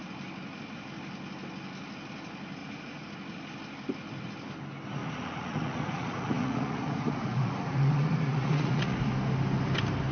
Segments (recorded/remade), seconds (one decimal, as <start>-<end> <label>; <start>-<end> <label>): 0.0-2.6 recorded; 2.6-3.1 remade; 3.1-5.0 recorded; 5.0-9.1 remade; 9.1-10.1 recorded

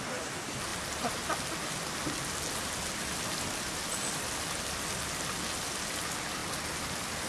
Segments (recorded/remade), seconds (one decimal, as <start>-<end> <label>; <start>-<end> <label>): 0.0-7.3 recorded